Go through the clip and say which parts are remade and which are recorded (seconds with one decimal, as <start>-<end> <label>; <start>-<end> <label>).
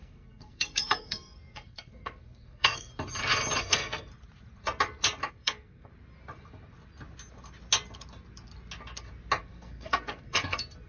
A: 0.0-2.9 remade; 2.9-3.6 recorded; 3.6-4.1 remade; 4.1-5.3 recorded; 5.3-5.9 remade; 5.9-9.4 recorded; 9.4-10.9 remade